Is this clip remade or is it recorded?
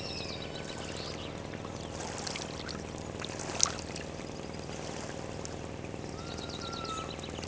recorded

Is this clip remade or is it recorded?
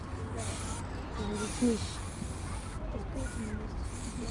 recorded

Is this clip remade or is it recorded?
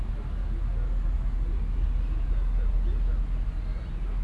recorded